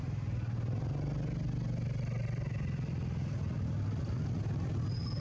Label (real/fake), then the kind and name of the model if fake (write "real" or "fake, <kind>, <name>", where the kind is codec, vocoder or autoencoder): real